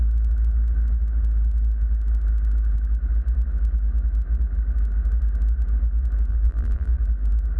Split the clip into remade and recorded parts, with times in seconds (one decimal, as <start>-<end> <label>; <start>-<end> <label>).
0.0-6.3 recorded; 6.3-7.0 remade; 7.0-7.6 recorded